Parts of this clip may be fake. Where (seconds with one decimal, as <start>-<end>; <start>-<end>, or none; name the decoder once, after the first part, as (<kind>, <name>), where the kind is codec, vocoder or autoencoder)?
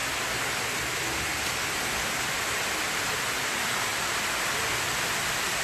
3.9-5.6 (vocoder, BigVGAN v2)